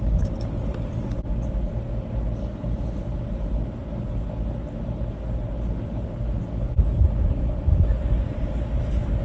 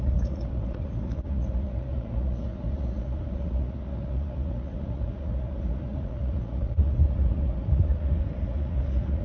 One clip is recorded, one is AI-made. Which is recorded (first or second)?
first